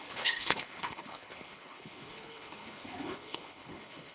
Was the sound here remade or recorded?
remade